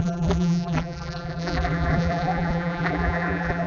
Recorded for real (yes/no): no